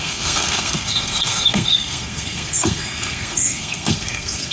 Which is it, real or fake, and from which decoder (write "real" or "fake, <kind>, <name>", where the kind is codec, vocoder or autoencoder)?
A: fake, codec, SNAC